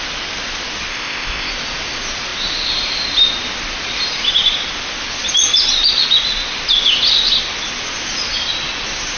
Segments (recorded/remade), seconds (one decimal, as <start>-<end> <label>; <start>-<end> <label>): 0.0-0.9 recorded; 0.9-1.5 remade; 1.5-9.2 recorded